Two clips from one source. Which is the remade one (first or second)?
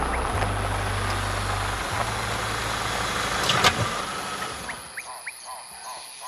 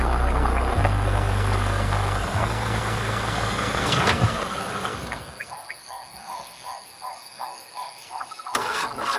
second